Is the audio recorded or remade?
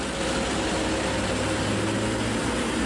recorded